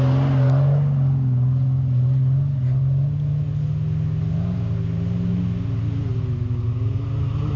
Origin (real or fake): real